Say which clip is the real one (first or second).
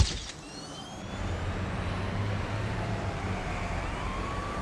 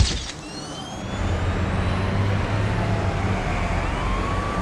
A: second